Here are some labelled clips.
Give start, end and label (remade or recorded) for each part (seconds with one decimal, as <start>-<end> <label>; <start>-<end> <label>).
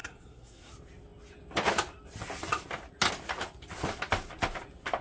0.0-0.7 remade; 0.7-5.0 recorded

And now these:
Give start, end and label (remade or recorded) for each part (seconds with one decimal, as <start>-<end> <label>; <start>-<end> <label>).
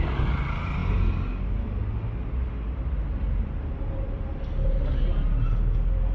0.0-6.1 recorded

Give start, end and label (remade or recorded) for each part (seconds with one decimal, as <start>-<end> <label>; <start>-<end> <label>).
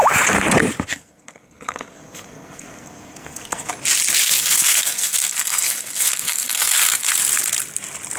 0.0-0.9 recorded; 0.9-3.7 remade; 3.7-4.4 recorded; 4.4-7.1 remade; 7.1-8.2 recorded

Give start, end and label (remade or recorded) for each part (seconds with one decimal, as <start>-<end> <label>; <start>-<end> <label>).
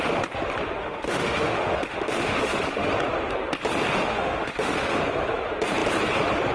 0.0-0.8 recorded; 0.8-2.9 remade; 2.9-4.0 recorded; 4.0-5.0 remade; 5.0-6.5 recorded